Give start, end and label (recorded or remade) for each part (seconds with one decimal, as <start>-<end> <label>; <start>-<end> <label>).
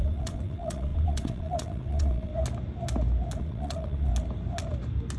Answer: 0.0-2.3 remade; 2.3-3.4 recorded; 3.4-4.1 remade; 4.1-5.2 recorded